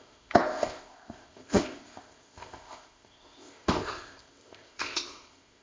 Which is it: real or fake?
fake